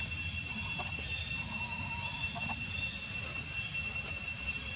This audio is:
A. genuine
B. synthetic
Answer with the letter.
A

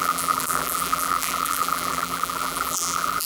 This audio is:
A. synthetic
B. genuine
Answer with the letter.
A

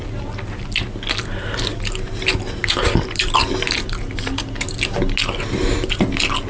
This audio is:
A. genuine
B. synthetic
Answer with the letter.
A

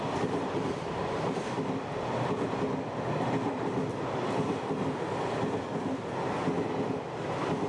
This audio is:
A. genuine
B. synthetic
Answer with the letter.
A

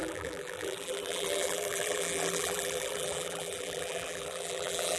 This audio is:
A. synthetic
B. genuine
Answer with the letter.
A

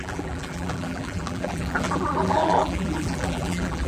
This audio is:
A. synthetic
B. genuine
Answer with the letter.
A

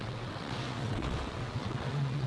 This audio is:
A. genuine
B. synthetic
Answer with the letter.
B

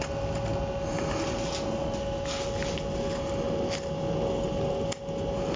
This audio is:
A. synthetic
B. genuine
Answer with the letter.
B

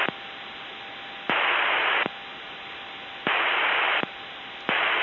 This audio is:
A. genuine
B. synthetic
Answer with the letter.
A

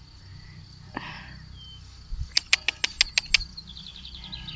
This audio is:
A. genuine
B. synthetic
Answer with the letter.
A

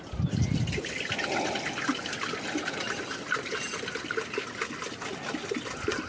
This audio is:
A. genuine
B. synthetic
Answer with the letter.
A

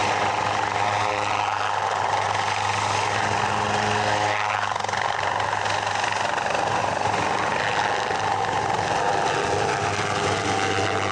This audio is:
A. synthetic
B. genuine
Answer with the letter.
B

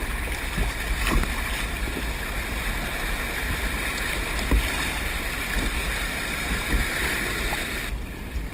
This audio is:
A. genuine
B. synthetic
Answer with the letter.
A